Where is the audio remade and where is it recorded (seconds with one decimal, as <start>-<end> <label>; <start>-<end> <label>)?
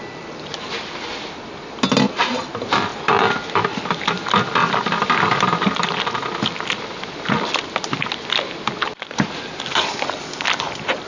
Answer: 0.0-11.1 recorded